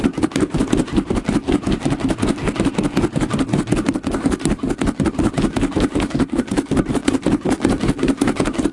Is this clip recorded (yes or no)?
yes